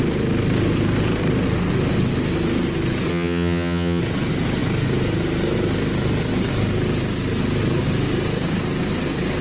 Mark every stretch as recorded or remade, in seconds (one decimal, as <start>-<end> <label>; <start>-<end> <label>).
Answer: 0.0-3.1 recorded; 3.1-4.0 remade; 4.0-9.4 recorded